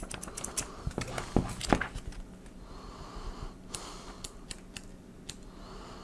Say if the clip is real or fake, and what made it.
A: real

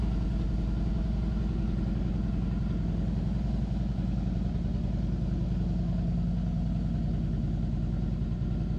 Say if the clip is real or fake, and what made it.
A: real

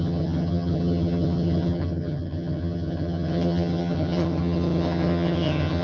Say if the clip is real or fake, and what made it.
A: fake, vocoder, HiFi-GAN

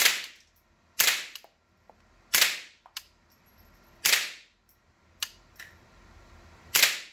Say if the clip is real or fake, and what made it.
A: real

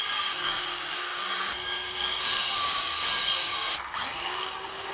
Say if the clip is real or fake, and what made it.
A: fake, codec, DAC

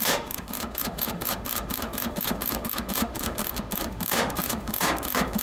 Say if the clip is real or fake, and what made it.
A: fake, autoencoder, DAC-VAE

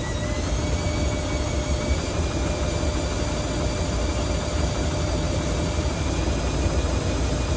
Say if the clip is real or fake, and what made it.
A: real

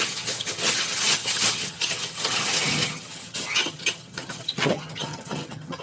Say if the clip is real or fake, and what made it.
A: fake, vocoder, HiFi-GAN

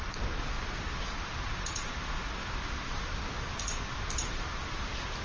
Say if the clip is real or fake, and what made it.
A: real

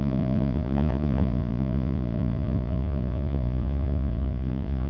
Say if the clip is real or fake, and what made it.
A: fake, vocoder, Vocos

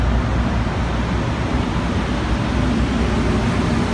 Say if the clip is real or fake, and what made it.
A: real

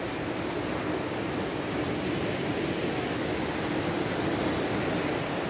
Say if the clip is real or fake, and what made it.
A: real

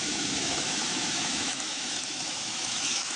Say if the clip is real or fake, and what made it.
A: fake, autoencoder, DAC-VAE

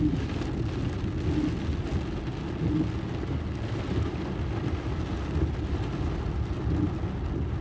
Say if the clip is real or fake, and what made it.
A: real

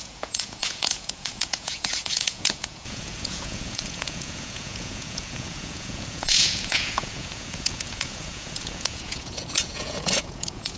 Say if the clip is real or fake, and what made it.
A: fake, vocoder, Vocos